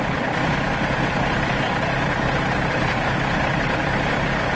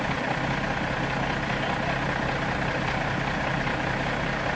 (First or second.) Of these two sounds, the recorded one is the second